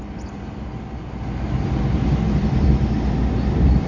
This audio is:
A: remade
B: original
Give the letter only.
A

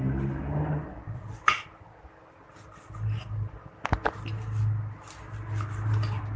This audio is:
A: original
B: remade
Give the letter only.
A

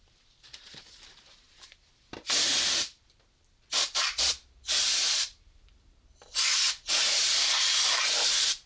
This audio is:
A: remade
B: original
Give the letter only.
A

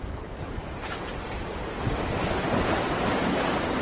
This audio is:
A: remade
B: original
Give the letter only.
A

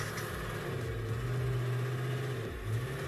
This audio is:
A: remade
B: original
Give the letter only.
B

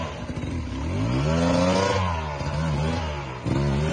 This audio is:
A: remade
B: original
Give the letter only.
B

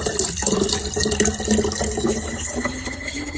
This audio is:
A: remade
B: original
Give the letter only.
B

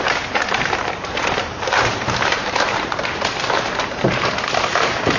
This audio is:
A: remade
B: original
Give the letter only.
A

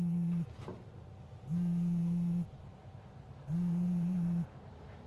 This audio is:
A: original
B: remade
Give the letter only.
B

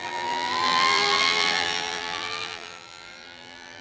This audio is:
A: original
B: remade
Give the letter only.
B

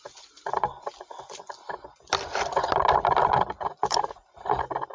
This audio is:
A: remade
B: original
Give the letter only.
B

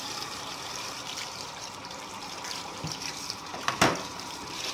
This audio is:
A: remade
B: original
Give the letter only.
A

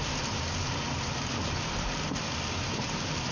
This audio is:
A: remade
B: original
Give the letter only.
A